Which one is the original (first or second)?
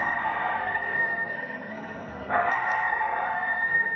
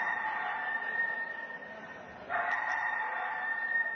second